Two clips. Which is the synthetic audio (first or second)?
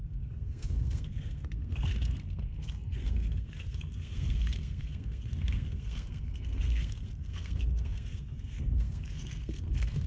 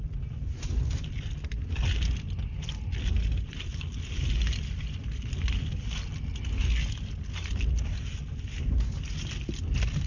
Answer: first